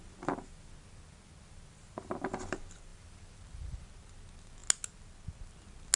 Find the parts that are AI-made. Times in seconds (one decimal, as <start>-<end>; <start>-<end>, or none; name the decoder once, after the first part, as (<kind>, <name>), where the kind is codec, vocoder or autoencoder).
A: 2.9-3.9 (vocoder, BigVGAN v2)